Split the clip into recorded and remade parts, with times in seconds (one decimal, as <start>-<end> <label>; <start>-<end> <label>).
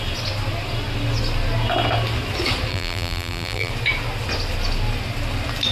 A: 0.0-2.7 recorded; 2.7-3.7 remade; 3.7-5.7 recorded